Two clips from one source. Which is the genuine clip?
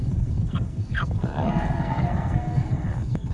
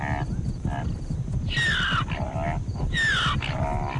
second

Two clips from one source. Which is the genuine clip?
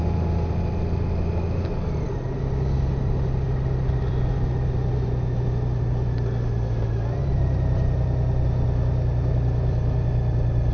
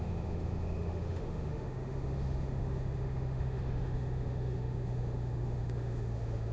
first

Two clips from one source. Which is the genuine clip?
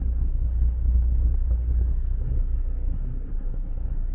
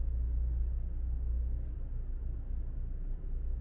second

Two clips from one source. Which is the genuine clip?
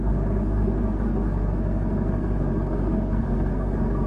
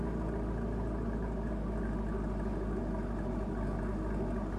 second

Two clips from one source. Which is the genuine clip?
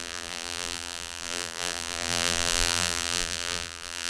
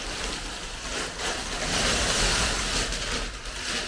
second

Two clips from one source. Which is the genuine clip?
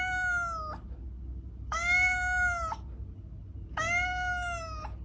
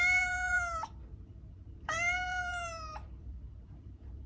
first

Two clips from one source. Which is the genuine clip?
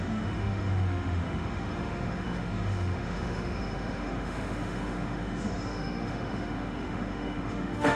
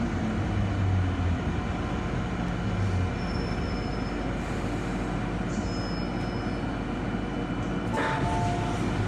second